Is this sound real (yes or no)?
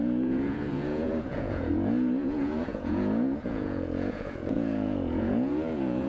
no